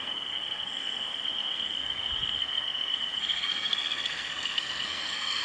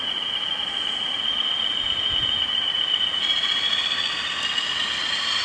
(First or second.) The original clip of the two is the second